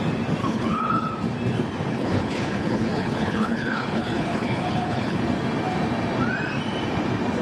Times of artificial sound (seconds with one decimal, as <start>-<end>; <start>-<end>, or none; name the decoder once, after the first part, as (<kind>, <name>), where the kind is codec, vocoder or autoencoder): 0.4-1.1 (codec, HILCodec); 1.9-5.2